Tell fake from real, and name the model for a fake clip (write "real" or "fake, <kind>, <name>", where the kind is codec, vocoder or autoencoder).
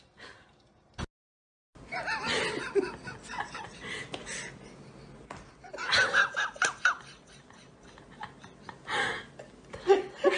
real